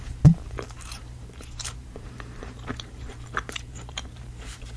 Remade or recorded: remade